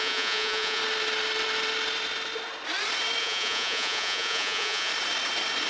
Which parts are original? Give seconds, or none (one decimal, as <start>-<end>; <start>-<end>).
0.8-3.2; 4.9-5.7